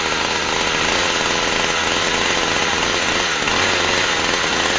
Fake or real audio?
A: real